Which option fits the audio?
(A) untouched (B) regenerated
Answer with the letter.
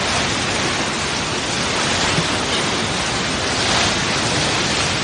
A